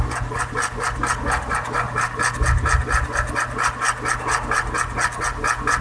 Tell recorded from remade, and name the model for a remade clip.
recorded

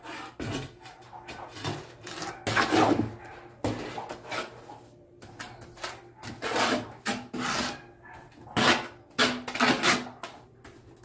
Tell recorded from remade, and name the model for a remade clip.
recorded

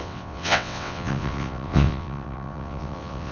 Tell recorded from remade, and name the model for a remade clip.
remade, vocoder, WaveNeXt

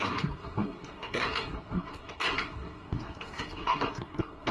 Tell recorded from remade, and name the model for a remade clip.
remade, codec, SNAC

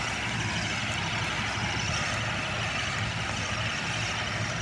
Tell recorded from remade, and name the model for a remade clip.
recorded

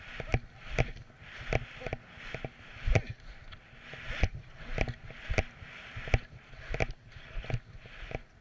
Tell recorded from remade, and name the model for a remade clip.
recorded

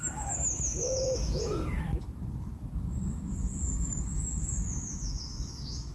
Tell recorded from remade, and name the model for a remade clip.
remade, autoencoder, DAC-VAE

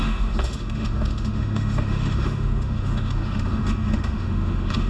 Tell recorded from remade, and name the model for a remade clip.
remade, autoencoder, DAC-VAE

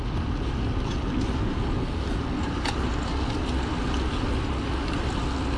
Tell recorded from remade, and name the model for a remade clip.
recorded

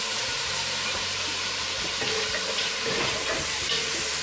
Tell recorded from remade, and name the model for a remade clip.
remade, vocoder, BigVGAN v2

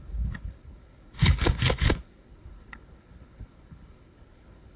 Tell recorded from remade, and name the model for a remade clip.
remade, codec, HILCodec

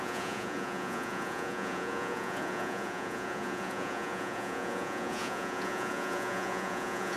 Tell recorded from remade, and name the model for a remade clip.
remade, vocoder, Vocos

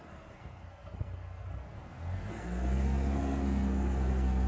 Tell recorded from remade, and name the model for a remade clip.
remade, codec, SNAC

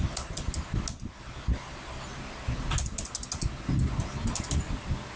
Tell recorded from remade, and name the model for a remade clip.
recorded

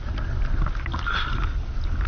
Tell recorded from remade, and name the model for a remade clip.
recorded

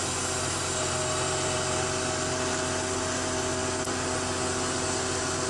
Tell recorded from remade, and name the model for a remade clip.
recorded